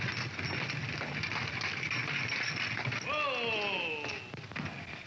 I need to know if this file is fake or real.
real